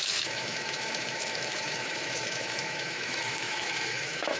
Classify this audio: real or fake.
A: fake